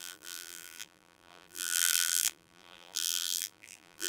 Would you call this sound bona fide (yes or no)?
no